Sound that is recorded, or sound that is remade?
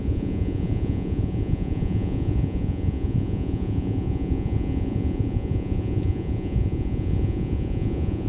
remade